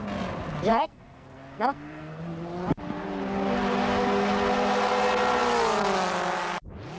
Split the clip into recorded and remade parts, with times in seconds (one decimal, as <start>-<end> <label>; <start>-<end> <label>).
0.0-0.7 recorded; 0.7-2.2 remade; 2.2-7.0 recorded